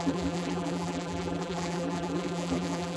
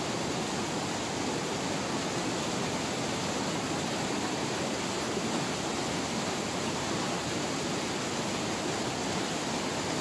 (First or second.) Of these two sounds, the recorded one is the second